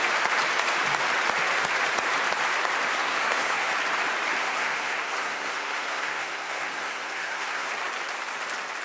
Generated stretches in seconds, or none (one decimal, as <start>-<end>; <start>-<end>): 2.9-3.7; 4.4-7.7